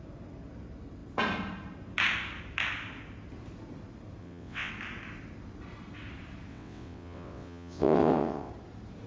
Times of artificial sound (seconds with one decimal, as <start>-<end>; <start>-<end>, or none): 4.2-4.7; 6.5-8.5